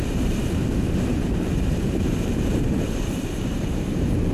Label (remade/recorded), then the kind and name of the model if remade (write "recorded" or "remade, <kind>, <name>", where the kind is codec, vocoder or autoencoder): remade, vocoder, BigVGAN v2